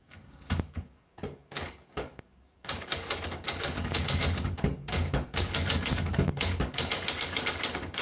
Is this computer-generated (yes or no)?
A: yes